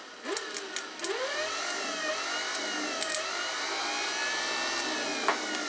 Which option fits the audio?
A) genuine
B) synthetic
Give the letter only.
A